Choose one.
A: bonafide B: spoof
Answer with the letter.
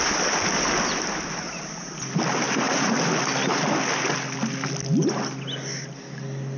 A